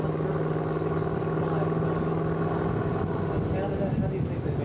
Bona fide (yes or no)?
yes